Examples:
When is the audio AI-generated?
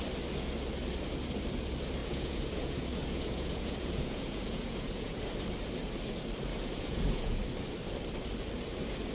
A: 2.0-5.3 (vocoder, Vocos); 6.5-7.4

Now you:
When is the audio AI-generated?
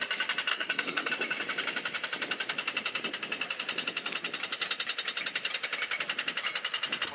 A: 0.5-1.1 (codec, SNAC)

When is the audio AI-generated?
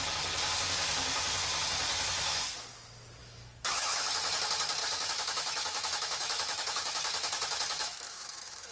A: 3.2-4.1 (autoencoder, DAC-VAE); 4.8-8.7